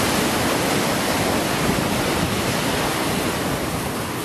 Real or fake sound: real